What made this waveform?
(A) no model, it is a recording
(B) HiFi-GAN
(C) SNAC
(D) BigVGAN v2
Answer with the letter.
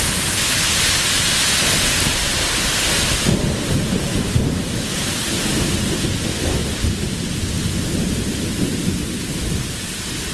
A